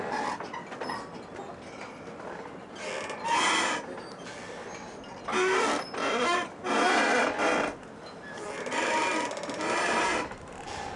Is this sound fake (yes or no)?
no